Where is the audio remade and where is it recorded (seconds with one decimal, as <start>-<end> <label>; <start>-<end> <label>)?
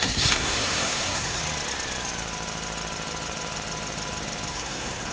0.0-1.4 remade; 1.4-4.5 recorded; 4.5-5.1 remade